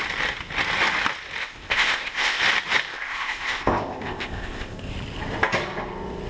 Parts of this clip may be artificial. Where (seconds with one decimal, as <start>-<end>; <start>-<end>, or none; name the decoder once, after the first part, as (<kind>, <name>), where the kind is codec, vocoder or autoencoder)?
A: 1.4-2.4 (codec, ZipCodec); 2.9-4.9